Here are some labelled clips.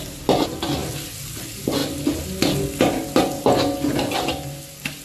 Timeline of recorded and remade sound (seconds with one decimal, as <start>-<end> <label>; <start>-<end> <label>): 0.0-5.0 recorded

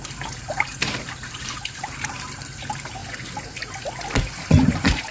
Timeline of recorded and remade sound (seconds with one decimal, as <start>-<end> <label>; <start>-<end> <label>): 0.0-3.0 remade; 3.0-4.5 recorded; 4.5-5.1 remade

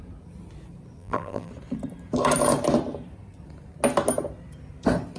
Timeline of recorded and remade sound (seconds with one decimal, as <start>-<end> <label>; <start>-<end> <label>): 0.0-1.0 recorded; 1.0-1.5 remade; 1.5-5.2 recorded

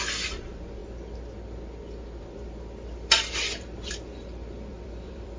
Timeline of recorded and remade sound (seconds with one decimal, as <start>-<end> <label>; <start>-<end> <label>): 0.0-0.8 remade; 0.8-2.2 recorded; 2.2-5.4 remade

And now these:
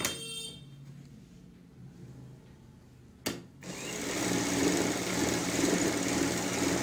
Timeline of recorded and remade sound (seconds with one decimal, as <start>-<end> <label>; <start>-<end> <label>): 0.0-5.4 recorded; 5.4-5.9 remade; 5.9-6.8 recorded

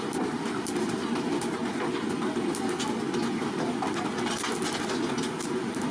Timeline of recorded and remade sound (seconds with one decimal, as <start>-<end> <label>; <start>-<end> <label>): 0.0-1.6 remade; 1.6-5.1 recorded; 5.1-5.9 remade

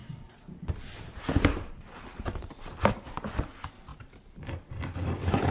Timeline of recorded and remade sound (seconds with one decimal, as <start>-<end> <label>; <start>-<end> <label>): 0.0-3.3 remade; 3.3-3.9 recorded; 3.9-4.7 remade; 4.7-5.5 recorded